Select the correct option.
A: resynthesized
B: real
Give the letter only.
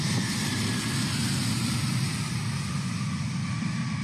A